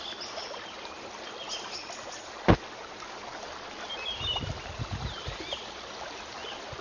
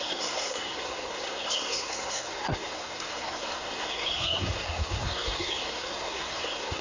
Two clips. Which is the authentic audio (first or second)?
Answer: first